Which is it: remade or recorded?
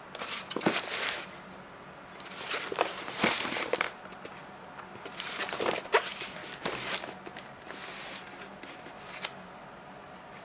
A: recorded